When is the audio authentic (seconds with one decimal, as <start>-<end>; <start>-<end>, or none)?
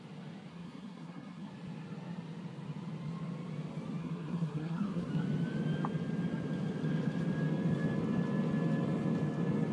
0.0-0.5; 1.5-4.0; 5.1-9.7